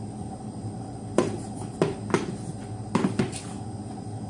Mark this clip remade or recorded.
recorded